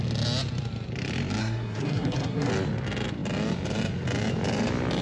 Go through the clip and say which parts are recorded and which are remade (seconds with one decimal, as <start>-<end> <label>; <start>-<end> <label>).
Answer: 0.0-1.4 recorded; 1.4-2.5 remade; 2.5-5.0 recorded